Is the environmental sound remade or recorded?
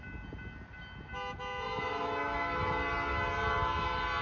recorded